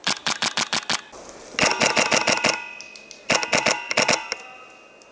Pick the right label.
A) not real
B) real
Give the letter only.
B